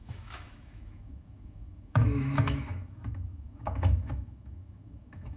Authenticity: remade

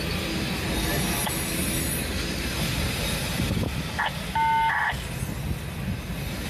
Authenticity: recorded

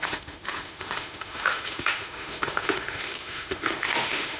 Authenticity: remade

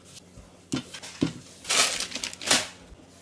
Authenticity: recorded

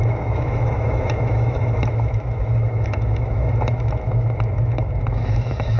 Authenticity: remade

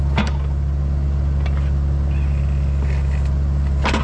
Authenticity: recorded